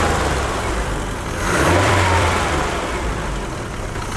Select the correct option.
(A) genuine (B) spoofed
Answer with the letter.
B